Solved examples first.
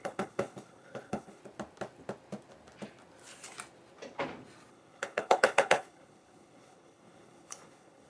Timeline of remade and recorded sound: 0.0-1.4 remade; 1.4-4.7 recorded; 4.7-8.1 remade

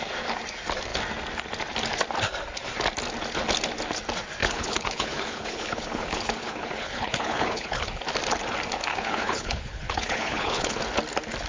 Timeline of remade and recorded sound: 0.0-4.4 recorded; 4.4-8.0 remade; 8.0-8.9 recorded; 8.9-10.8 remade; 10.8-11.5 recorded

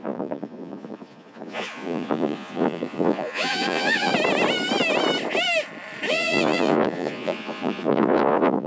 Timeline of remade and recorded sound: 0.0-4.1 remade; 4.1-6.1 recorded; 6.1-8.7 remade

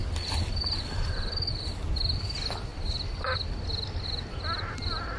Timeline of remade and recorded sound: 0.0-5.2 recorded